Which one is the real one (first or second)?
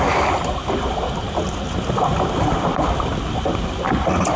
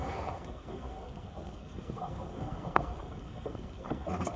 first